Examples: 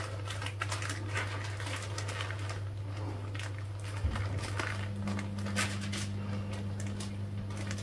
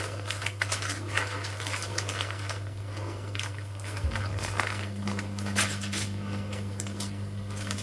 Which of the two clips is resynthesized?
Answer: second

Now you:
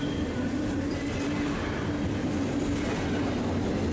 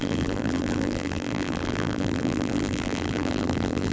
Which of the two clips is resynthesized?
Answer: second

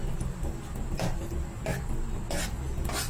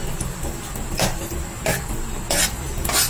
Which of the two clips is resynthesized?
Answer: second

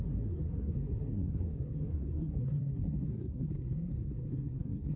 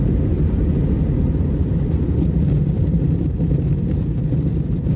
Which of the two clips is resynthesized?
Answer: first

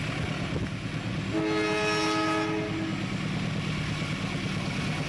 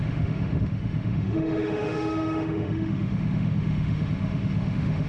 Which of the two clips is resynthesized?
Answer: second